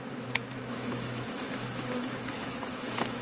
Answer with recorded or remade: remade